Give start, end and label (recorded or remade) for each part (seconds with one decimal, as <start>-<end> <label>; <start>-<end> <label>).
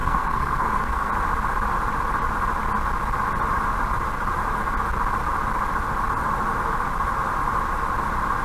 0.0-1.1 remade; 1.1-8.4 recorded